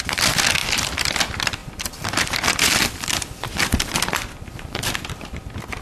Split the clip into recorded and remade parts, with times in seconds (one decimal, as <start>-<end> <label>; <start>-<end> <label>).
0.0-0.6 recorded; 0.6-1.2 remade; 1.2-1.6 recorded; 1.6-5.1 remade; 5.1-5.8 recorded